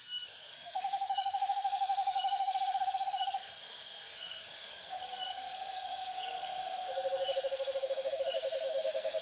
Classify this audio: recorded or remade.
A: remade